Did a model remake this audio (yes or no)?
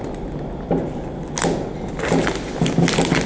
no